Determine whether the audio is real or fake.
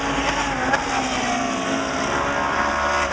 real